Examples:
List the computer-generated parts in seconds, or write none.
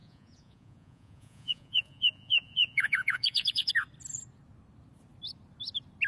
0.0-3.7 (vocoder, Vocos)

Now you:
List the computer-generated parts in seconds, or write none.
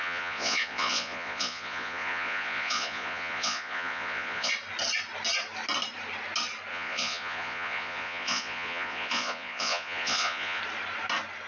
0.0-4.5 (vocoder, Vocos); 6.7-10.6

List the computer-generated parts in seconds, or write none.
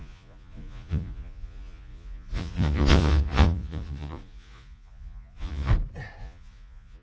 0.0-5.7 (vocoder, Vocos); 6.2-7.0